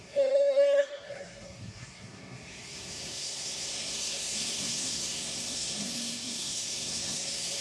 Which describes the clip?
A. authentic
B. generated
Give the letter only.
B